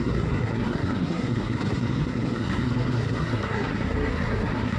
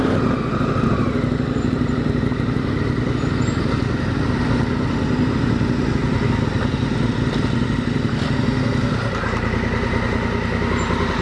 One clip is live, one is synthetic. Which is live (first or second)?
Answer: second